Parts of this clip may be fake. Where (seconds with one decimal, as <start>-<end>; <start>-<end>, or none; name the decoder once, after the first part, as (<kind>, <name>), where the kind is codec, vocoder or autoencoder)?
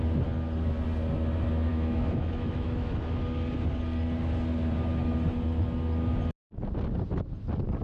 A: 1.7-2.9 (autoencoder, DAC-VAE)